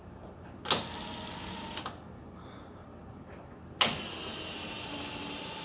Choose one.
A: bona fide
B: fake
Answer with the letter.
A